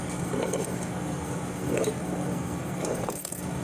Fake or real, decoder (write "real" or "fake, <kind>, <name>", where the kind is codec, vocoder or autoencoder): fake, codec, SNAC